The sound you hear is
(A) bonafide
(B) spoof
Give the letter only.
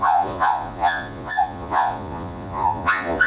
B